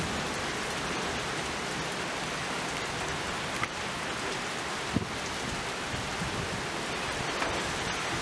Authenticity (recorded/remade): recorded